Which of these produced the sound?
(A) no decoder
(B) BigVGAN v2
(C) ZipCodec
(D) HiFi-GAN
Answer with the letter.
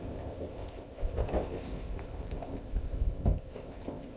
C